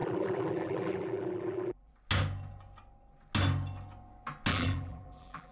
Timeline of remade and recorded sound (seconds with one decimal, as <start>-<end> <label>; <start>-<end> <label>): 0.0-1.9 remade; 1.9-4.5 recorded; 4.5-5.5 remade

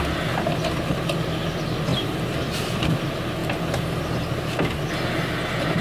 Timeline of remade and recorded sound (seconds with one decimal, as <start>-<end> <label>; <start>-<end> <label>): 0.0-1.9 recorded; 1.9-3.0 remade; 3.0-5.8 recorded

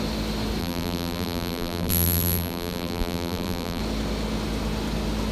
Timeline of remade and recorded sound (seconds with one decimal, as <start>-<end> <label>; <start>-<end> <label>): 0.0-0.6 recorded; 0.6-3.8 remade; 3.8-5.3 recorded

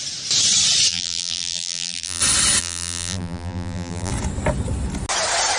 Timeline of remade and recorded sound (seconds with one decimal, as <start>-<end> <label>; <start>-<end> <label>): 0.0-0.9 recorded; 0.9-2.2 remade; 2.2-2.6 recorded; 2.6-4.1 remade; 4.1-5.6 recorded